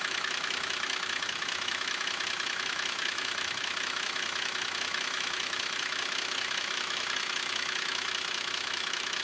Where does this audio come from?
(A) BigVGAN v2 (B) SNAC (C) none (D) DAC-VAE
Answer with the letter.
D